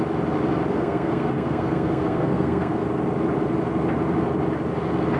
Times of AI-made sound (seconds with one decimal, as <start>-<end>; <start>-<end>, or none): 0.7-2.8